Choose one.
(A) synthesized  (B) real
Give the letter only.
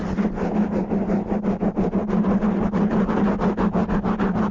B